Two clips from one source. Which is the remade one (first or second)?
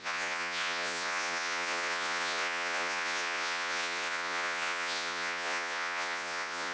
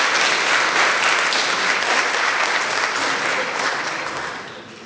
first